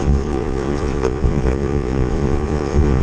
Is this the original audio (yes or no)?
no